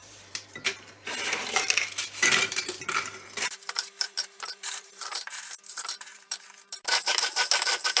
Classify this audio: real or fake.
fake